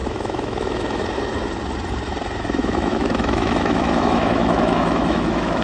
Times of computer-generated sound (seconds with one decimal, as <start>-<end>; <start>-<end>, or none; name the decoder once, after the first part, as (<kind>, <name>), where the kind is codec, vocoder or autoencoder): 0.0-1.0 (autoencoder, DAC-VAE); 2.6-5.6